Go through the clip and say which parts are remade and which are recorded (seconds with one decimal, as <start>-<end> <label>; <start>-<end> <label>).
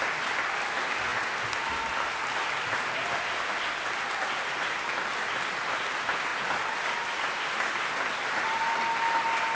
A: 0.0-9.5 recorded